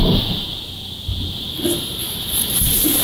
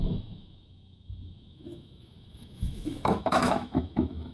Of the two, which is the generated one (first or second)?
second